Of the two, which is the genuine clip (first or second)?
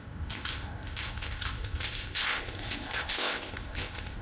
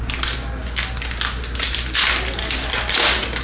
second